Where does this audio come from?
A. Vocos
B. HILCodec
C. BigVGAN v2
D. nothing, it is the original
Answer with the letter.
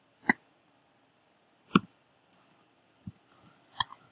C